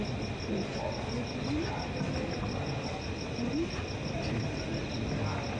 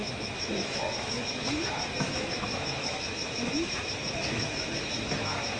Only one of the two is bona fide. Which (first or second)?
first